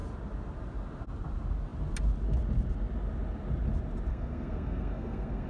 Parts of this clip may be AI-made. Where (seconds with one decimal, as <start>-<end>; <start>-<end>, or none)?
4.1-5.5